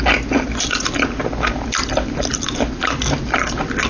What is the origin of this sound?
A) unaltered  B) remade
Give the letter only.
A